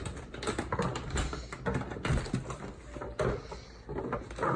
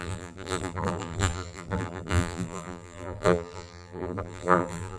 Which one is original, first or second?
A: first